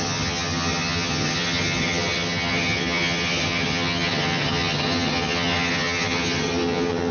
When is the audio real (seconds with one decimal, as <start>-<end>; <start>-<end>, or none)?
none